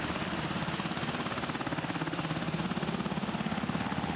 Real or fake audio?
real